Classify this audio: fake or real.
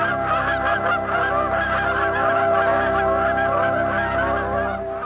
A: real